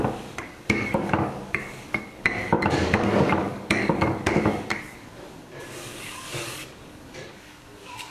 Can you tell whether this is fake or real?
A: fake